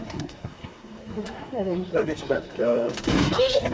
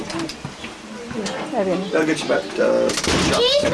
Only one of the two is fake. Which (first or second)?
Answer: first